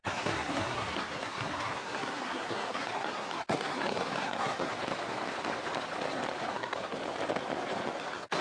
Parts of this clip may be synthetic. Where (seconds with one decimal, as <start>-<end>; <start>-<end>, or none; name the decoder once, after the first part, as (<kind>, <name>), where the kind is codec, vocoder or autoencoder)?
0.0-4.7 (codec, SNAC); 6.5-7.0; 8.0-8.4